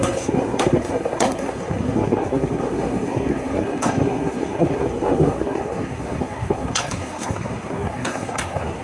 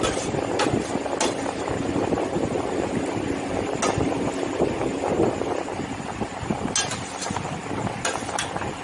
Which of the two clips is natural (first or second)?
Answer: second